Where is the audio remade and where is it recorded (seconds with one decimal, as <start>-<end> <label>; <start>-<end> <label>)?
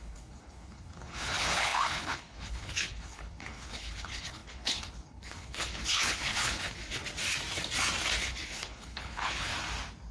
0.0-7.0 remade; 7.0-8.2 recorded; 8.2-9.5 remade; 9.5-10.1 recorded